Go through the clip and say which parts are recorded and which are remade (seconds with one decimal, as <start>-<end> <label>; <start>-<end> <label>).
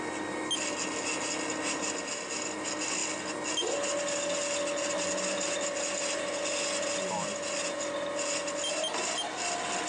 0.0-9.9 recorded